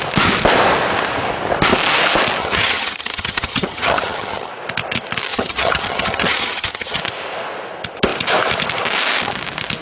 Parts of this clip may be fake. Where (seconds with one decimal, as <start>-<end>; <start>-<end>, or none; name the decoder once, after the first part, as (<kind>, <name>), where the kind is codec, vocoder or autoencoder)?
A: 2.4-4.5 (vocoder, HiFi-GAN); 5.3-7.0